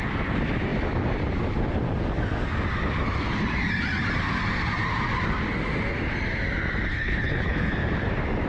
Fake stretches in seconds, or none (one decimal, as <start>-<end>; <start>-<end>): 6.9-7.7